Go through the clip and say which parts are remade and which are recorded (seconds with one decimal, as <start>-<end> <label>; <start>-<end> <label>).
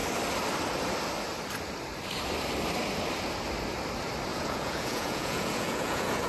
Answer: 0.0-4.3 recorded; 4.3-6.3 remade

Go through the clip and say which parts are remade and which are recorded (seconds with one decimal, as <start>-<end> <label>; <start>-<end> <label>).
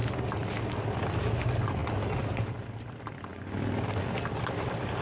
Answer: 0.0-1.4 recorded; 1.4-3.3 remade; 3.3-5.0 recorded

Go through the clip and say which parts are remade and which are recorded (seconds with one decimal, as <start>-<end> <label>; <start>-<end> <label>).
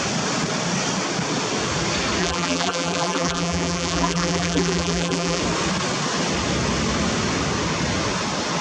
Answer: 0.0-2.2 recorded; 2.2-5.4 remade; 5.4-8.6 recorded